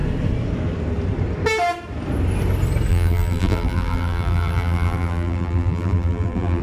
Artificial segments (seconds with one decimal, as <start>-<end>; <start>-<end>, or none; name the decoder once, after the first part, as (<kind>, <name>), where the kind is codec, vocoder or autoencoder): 2.9-6.6 (vocoder, BigVGAN v2)